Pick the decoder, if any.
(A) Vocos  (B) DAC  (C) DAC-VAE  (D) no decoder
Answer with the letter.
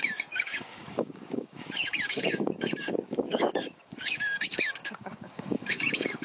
B